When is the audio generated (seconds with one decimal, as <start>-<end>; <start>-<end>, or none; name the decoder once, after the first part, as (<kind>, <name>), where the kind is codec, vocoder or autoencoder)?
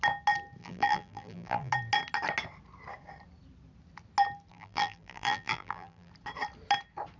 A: 0.6-1.7 (vocoder, BigVGAN v2); 4.5-6.1